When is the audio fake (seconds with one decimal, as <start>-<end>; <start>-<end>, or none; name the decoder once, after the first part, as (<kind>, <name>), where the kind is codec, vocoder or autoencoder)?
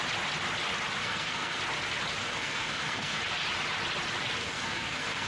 1.0-1.6 (codec, SNAC); 2.2-3.2; 4.4-5.3